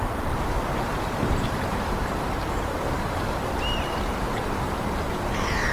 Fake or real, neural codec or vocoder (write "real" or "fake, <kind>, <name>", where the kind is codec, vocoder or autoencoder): fake, vocoder, BigVGAN v2